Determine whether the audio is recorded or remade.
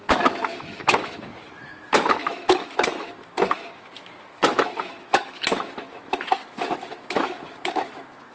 remade